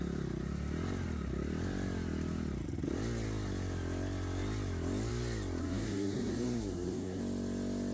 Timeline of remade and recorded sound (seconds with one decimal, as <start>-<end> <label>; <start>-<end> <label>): 0.0-5.6 recorded; 5.6-7.2 remade; 7.2-7.9 recorded